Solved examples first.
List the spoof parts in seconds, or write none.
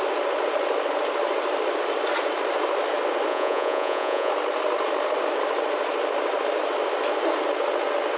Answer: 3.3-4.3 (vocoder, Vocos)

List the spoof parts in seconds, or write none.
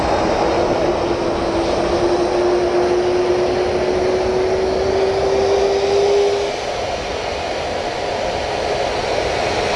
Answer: none